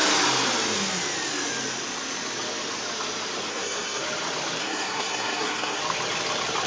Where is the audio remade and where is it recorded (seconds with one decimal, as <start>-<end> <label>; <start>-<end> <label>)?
0.0-3.5 recorded; 3.5-4.0 remade; 4.0-4.6 recorded; 4.6-5.8 remade; 5.8-6.7 recorded